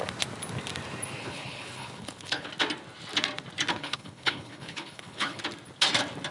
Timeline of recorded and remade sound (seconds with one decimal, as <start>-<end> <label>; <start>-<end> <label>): 0.0-1.2 recorded; 1.2-2.5 remade; 2.5-3.7 recorded; 3.7-5.4 remade; 5.4-6.3 recorded